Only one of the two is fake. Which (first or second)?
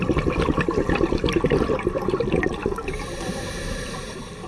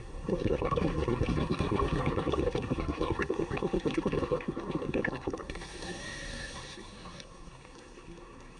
second